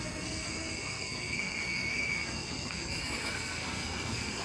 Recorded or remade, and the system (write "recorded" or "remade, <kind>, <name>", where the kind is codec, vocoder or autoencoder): remade, codec, SNAC